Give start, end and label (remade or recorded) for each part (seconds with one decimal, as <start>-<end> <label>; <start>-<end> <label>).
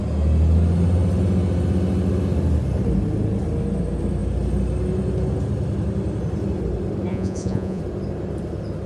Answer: 0.0-7.1 recorded; 7.1-7.8 remade; 7.8-8.9 recorded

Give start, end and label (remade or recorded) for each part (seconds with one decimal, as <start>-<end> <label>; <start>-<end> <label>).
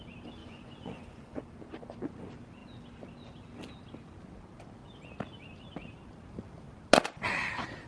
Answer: 0.0-0.4 recorded; 0.4-1.4 remade; 1.4-7.9 recorded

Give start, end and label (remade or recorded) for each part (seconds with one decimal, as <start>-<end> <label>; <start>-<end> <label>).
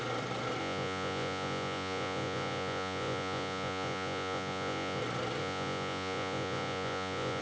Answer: 0.0-0.6 recorded; 0.6-5.0 remade; 5.0-5.4 recorded; 5.4-7.4 remade